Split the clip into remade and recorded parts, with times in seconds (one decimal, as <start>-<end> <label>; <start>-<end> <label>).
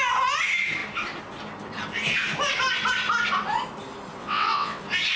0.0-4.2 recorded; 4.2-4.8 remade; 4.8-5.2 recorded